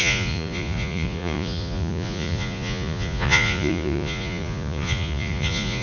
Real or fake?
fake